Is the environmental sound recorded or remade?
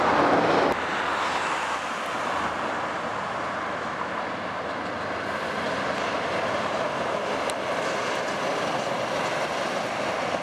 recorded